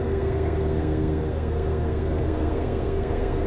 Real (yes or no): no